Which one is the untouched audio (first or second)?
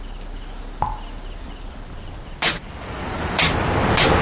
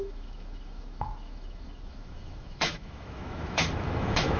first